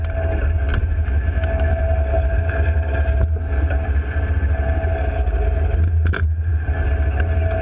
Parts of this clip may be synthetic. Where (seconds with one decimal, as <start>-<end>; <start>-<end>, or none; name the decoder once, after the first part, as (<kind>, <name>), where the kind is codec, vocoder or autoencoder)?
0.8-1.8 (autoencoder, DAC-VAE)